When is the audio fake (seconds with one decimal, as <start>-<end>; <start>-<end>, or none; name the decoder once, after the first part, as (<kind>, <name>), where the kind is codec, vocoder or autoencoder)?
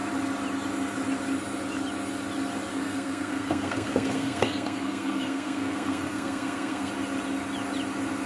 2.7-6.9 (codec, SNAC)